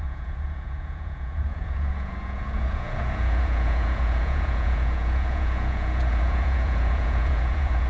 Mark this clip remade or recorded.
remade